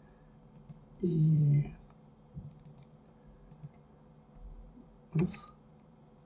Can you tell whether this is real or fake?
fake